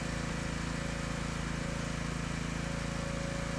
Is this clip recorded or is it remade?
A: recorded